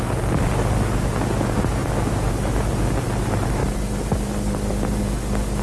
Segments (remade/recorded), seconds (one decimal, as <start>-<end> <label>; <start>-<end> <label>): 0.0-5.6 recorded